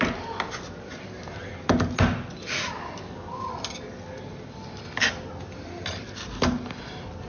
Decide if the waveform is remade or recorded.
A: recorded